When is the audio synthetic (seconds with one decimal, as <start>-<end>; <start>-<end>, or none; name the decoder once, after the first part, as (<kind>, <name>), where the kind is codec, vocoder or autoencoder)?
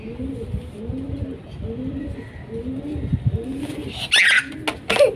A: none